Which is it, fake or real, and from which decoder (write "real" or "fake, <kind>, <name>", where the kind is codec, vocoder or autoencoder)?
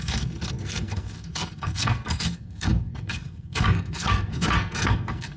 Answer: fake, codec, SNAC